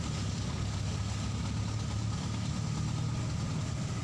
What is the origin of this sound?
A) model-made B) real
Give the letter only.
B